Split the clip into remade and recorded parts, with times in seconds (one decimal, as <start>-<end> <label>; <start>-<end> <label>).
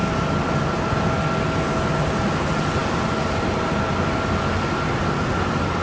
0.0-5.8 recorded